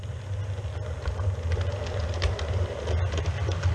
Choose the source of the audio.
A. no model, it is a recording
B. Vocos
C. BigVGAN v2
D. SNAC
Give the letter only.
A